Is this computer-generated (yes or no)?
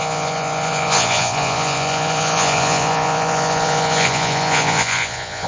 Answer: yes